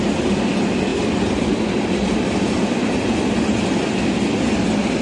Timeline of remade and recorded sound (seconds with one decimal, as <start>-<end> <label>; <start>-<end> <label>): 0.0-5.0 recorded